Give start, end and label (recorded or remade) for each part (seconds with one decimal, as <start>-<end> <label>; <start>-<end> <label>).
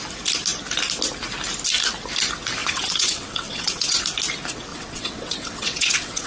0.0-2.6 recorded; 2.6-4.0 remade; 4.0-4.7 recorded; 4.7-6.3 remade